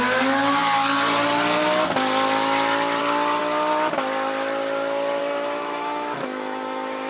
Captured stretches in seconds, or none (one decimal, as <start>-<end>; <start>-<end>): 0.0-5.2